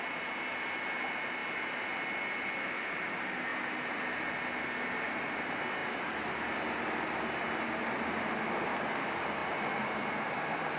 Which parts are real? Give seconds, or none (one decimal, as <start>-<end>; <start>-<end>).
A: 0.0-9.4; 10.4-10.8